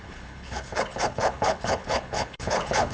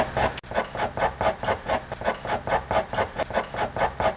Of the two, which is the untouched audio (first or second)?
second